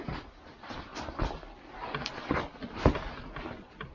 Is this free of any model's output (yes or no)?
yes